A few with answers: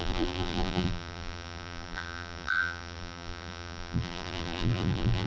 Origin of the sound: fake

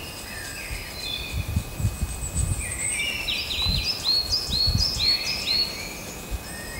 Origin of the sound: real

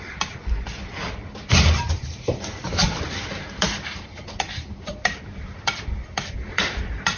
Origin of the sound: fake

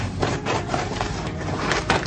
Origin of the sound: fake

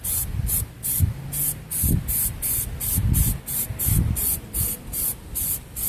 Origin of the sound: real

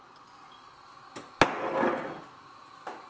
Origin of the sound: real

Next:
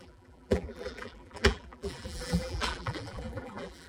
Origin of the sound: fake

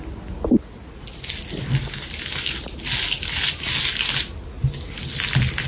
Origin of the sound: real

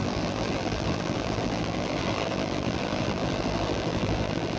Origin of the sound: fake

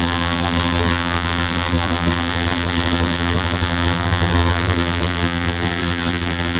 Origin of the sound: fake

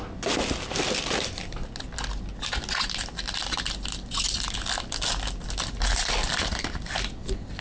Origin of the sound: real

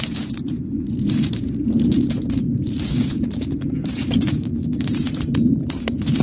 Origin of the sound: fake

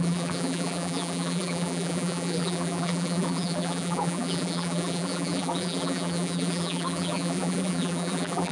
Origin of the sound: fake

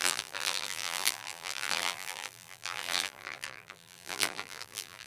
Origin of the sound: fake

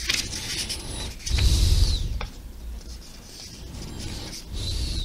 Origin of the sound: real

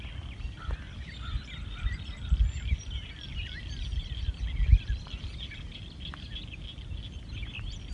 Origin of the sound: real